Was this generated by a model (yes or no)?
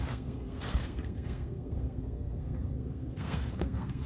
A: yes